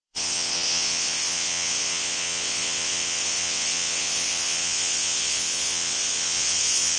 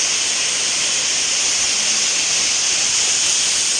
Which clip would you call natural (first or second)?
second